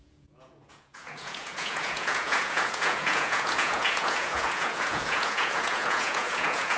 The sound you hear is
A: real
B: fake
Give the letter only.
B